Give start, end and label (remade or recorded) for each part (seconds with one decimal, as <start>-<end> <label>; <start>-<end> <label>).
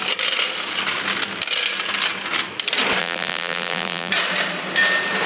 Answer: 0.0-3.0 recorded; 3.0-4.1 remade; 4.1-5.3 recorded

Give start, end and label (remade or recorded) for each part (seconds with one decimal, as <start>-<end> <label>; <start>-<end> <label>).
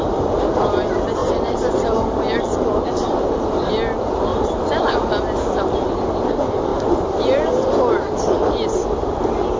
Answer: 0.0-1.2 recorded; 1.2-3.3 remade; 3.3-4.3 recorded; 4.3-5.1 remade; 5.1-6.7 recorded; 6.7-7.5 remade; 7.5-9.6 recorded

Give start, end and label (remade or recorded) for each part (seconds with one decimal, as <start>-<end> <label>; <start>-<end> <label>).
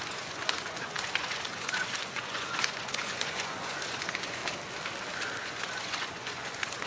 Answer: 0.0-4.4 remade; 4.4-5.1 recorded; 5.1-6.9 remade